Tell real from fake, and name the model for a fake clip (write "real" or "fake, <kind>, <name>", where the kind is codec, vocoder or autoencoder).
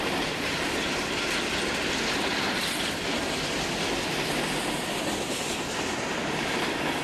real